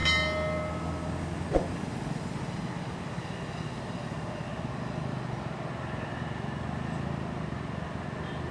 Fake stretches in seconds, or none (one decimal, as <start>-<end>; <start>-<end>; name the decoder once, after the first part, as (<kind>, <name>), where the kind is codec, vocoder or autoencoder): none